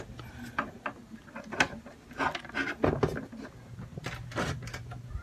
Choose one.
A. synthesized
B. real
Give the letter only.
B